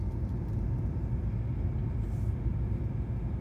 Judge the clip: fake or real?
real